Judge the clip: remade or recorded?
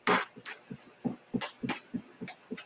recorded